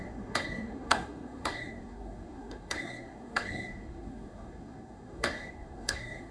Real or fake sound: fake